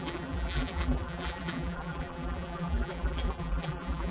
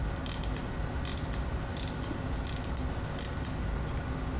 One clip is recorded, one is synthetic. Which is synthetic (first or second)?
first